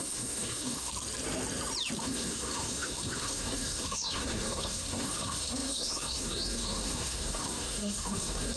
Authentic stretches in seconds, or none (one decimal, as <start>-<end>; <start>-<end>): 0.9-2.0